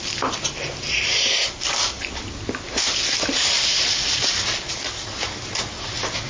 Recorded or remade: recorded